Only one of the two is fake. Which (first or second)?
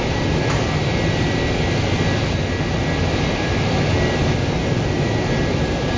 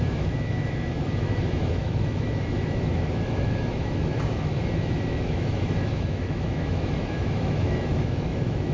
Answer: second